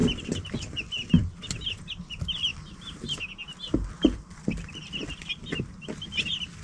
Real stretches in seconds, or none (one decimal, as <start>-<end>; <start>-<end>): 1.8-2.5; 5.6-6.6